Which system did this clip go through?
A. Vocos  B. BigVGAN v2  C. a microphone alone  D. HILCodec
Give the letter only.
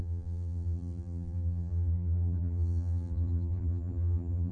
B